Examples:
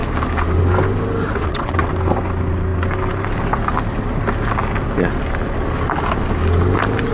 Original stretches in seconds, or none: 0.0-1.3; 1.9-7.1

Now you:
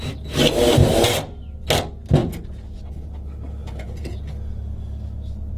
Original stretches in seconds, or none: 0.0-2.2; 2.9-3.6; 4.2-5.6

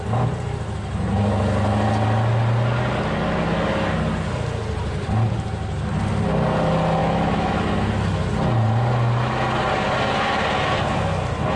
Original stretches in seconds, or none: 0.0-7.0; 7.6-11.6